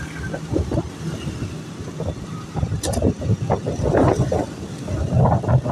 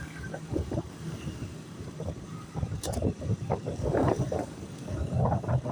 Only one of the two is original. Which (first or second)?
first